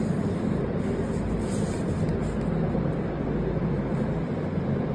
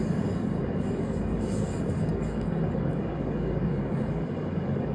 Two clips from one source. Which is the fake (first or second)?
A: second